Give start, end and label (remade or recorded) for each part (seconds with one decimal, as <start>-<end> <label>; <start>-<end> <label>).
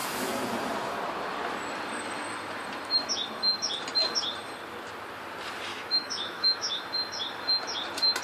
0.0-5.7 recorded; 5.7-6.8 remade; 6.8-8.2 recorded